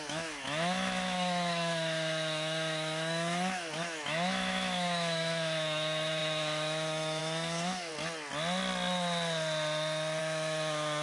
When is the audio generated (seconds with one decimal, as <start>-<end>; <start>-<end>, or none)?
0.0-7.9; 10.2-11.0